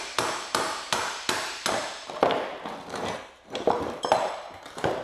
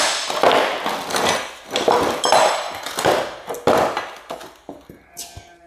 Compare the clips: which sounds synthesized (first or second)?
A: first